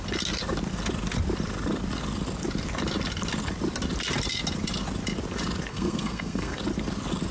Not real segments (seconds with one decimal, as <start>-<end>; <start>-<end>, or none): 5.7-6.6

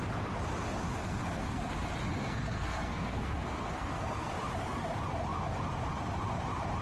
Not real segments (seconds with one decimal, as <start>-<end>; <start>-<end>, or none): 1.0-1.7; 2.2-4.3

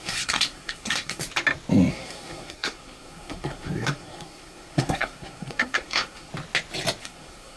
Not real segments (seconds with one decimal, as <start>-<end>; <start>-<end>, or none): 0.0-1.2; 1.9-6.3; 7.0-7.6

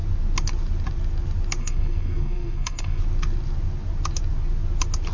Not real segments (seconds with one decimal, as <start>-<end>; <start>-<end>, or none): 1.6-3.0

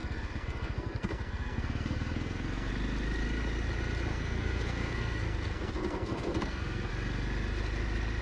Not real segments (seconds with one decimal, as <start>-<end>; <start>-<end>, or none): 0.0-2.7; 4.1-6.9

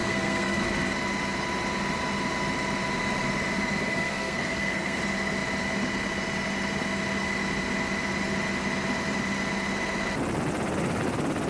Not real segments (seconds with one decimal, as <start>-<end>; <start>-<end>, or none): 0.0-0.6; 3.9-5.0

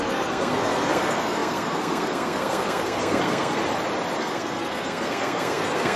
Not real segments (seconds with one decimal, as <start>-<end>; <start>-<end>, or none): 0.0-3.6; 4.2-6.0

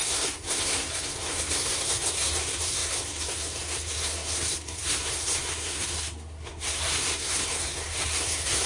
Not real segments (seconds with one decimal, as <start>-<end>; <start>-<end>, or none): 0.0-8.7